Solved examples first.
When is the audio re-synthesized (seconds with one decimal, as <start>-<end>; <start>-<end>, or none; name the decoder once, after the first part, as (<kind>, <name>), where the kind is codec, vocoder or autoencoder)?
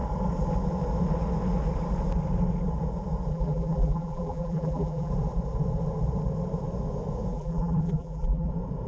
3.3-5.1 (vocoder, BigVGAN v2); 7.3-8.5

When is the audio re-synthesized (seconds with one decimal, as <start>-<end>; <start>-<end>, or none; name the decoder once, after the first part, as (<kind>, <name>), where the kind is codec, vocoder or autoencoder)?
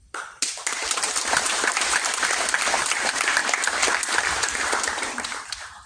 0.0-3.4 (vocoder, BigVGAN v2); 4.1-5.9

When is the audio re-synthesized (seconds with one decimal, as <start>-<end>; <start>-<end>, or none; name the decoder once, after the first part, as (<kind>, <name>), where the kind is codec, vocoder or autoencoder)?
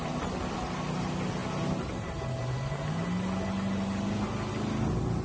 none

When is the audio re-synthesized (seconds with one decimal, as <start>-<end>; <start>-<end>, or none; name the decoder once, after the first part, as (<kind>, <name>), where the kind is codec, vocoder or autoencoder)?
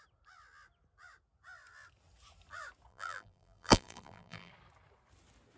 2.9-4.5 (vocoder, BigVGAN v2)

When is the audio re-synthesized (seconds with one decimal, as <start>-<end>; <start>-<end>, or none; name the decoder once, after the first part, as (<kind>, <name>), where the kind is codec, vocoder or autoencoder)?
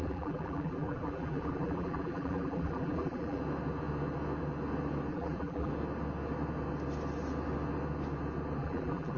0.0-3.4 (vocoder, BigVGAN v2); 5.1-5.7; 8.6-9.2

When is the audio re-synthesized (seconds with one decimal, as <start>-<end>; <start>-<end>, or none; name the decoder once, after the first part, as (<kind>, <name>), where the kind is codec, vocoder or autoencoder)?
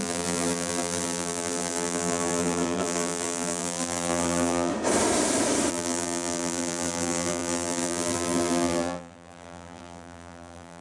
0.0-4.7 (vocoder, BigVGAN v2); 5.7-10.8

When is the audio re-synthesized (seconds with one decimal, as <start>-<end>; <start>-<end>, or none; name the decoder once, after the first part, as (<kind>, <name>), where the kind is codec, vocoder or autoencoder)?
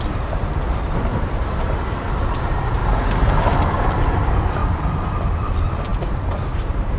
0.0-2.8 (vocoder, BigVGAN v2); 3.4-4.6; 5.5-7.0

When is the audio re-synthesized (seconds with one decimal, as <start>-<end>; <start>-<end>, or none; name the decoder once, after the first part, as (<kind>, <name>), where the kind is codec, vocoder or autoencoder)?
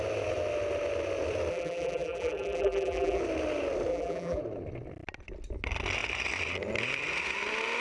1.5-3.2 (vocoder, BigVGAN v2); 3.9-4.4